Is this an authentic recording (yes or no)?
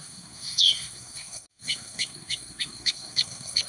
no